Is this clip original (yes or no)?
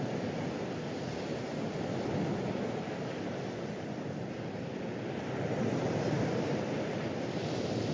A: yes